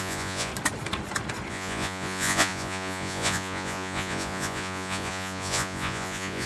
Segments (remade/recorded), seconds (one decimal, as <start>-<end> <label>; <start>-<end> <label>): 0.0-0.5 remade; 0.5-1.5 recorded; 1.5-6.5 remade

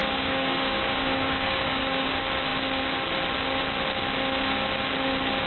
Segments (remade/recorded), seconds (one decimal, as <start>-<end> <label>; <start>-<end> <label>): 0.0-2.1 remade; 2.1-5.5 recorded

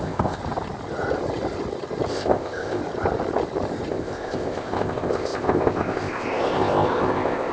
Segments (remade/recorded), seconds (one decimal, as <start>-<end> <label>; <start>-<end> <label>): 0.0-0.4 remade; 0.4-2.1 recorded; 2.1-2.8 remade; 2.8-3.9 recorded; 3.9-7.5 remade

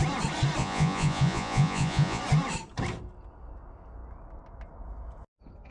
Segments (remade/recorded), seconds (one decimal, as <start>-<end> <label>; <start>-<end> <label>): 0.0-0.6 recorded; 0.6-2.2 remade; 2.2-5.7 recorded

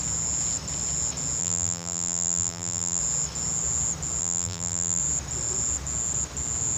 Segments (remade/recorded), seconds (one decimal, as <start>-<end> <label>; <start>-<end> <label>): 0.0-1.4 recorded; 1.4-3.0 remade; 3.0-4.2 recorded; 4.2-5.0 remade; 5.0-6.8 recorded

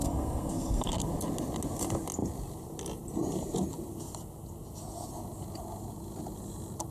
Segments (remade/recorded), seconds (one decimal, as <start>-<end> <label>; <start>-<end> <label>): 0.0-1.0 remade; 1.0-6.9 recorded

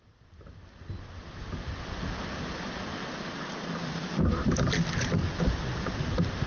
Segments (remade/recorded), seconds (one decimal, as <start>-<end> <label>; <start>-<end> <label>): 0.0-2.3 recorded; 2.3-4.1 remade; 4.1-5.2 recorded; 5.2-6.0 remade; 6.0-6.5 recorded